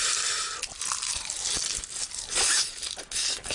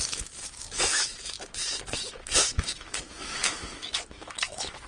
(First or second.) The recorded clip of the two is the first